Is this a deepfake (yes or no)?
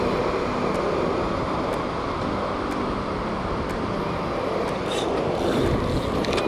no